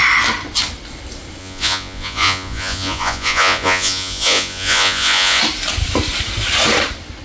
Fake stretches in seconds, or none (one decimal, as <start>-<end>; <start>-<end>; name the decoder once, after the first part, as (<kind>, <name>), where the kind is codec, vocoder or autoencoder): 1.4-5.4 (vocoder, Vocos)